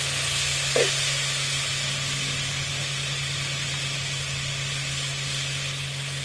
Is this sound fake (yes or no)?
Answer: no